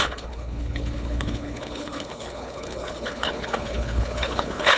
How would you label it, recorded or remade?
remade